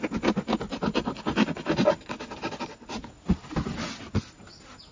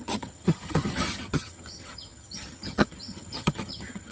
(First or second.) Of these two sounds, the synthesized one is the second